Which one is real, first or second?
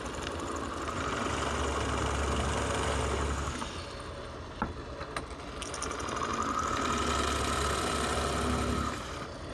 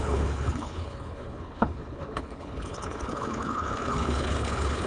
first